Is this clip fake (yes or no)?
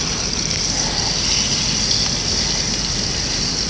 no